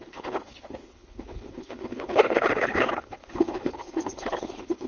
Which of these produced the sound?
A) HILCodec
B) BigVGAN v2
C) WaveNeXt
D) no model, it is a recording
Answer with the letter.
A